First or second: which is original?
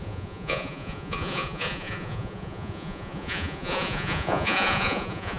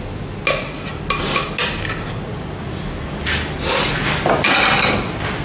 second